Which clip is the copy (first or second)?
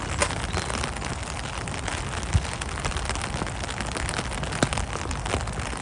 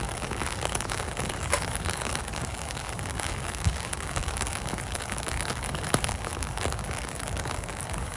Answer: second